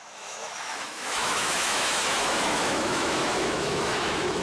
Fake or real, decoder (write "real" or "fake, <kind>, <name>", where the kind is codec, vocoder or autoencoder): fake, autoencoder, DAC-VAE